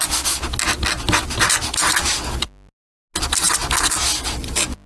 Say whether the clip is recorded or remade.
recorded